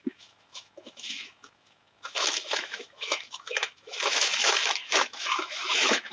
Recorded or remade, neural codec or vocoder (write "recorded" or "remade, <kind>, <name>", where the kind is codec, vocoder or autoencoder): remade, autoencoder, DAC-VAE